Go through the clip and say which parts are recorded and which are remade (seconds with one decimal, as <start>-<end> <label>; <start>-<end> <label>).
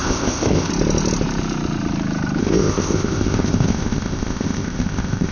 0.0-0.7 remade; 0.7-2.4 recorded; 2.4-5.3 remade